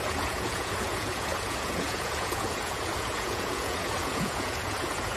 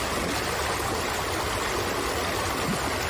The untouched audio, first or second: second